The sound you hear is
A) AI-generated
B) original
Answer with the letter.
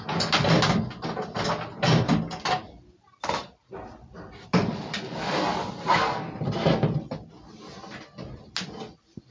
B